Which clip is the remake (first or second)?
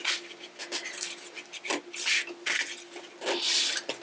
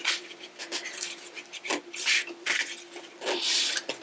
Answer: second